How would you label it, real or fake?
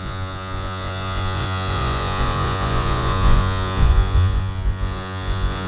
fake